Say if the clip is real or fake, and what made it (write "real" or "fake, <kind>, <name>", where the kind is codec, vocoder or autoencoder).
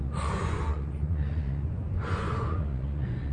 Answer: fake, vocoder, Vocos